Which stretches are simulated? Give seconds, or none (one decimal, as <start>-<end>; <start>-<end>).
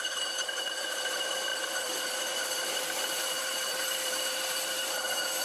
0.0-5.4